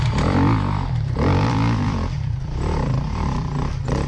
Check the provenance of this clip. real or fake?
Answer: fake